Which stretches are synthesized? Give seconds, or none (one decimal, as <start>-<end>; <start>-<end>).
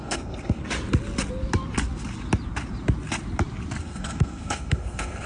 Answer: 0.0-0.6; 3.8-5.3